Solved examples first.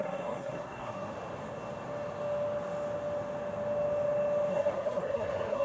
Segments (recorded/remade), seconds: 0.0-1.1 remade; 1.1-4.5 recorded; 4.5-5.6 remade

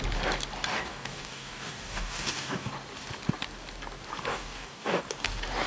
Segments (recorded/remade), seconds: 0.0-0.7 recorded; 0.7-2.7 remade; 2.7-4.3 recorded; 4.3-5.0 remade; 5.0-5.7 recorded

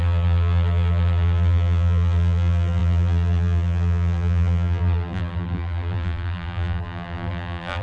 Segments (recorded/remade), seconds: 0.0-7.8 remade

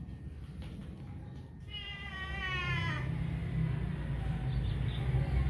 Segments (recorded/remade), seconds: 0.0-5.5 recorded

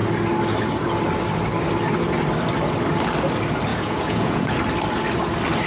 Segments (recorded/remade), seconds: 0.0-3.7 recorded; 3.7-4.6 remade; 4.6-5.7 recorded

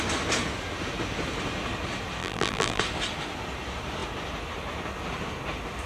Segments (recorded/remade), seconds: 0.0-2.2 recorded; 2.2-2.8 remade; 2.8-5.9 recorded